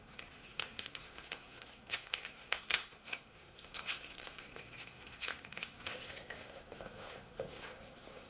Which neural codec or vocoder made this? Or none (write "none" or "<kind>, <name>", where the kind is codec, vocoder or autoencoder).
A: codec, SNAC